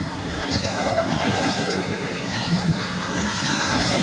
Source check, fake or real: fake